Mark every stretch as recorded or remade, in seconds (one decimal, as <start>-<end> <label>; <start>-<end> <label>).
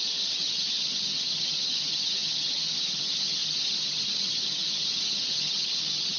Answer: 0.0-6.2 remade